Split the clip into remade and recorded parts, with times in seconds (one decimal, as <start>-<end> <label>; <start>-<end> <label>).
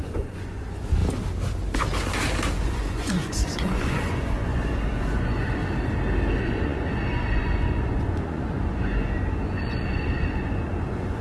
0.0-1.0 remade; 1.0-2.6 recorded; 2.6-5.6 remade; 5.6-6.4 recorded; 6.4-11.2 remade